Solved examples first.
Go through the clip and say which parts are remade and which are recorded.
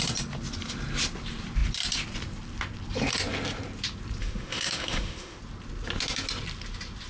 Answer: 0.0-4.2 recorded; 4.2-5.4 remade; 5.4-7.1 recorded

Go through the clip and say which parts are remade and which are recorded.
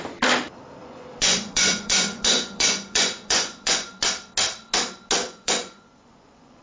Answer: 0.0-0.8 recorded; 0.8-4.1 remade; 4.1-5.2 recorded; 5.2-6.6 remade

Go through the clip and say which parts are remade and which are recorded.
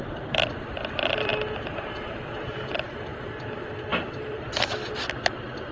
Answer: 0.0-1.3 remade; 1.3-2.8 recorded; 2.8-5.7 remade